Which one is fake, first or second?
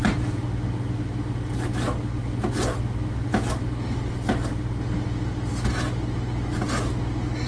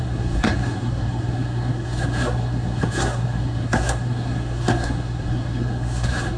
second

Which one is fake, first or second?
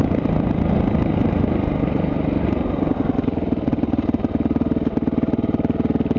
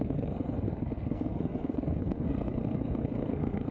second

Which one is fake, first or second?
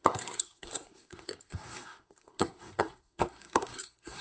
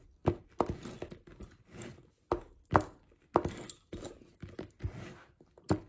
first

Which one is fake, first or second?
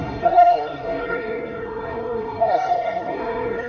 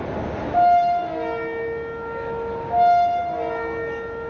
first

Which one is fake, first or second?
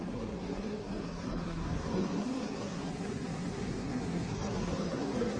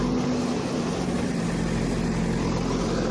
first